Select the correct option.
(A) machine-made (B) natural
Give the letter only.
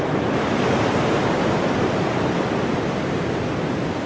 B